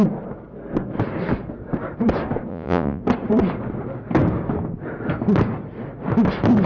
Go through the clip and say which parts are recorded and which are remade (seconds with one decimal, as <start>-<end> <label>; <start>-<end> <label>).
0.0-2.5 recorded; 2.5-3.0 remade; 3.0-6.7 recorded